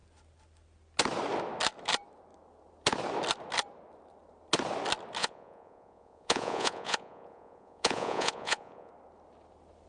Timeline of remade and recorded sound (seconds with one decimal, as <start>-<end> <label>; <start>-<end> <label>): 0.0-5.2 recorded; 5.2-8.9 remade; 8.9-9.9 recorded